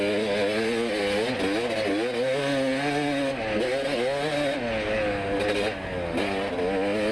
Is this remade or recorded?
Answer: recorded